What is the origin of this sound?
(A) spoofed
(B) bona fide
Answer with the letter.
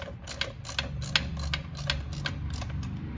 B